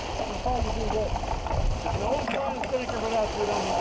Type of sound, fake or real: real